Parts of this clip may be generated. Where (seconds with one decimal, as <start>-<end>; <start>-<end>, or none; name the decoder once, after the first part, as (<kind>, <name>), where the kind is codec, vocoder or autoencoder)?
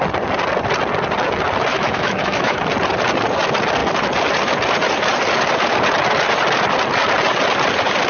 1.7-2.6 (autoencoder, DAC-VAE)